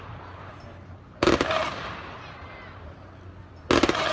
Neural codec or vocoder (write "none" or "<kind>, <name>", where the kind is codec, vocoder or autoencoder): none